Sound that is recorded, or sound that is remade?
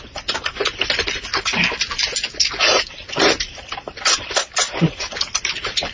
recorded